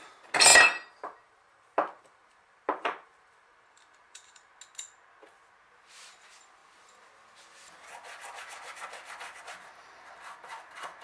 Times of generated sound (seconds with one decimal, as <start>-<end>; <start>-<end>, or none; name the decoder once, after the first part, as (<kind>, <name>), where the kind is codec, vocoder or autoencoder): 0.5-4.5 (vocoder, BigVGAN v2)